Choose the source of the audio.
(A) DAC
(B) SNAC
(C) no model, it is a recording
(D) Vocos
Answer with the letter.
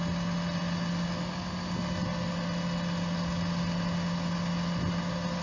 C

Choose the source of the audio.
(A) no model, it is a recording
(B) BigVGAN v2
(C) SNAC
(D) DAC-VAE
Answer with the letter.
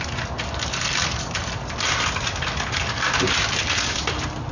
A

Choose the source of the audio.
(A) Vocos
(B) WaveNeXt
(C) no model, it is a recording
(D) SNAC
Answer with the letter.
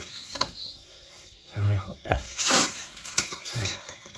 D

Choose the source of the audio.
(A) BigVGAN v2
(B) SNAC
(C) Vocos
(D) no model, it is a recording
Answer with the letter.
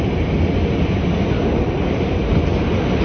D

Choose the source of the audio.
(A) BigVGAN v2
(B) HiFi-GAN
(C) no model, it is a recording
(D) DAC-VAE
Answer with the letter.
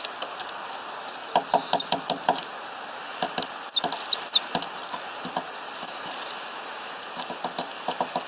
C